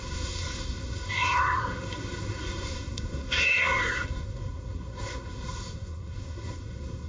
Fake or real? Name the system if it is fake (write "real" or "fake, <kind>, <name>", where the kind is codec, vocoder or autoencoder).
fake, codec, SNAC